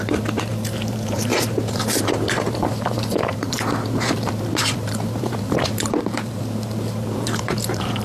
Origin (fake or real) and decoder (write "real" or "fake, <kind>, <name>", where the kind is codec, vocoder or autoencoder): fake, vocoder, BigVGAN v2